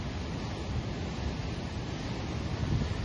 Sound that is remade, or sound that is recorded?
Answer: recorded